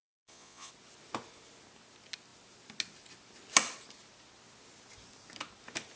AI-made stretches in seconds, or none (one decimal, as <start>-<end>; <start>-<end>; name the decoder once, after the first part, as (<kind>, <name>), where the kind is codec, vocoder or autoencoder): 0.0-0.7 (vocoder, Vocos)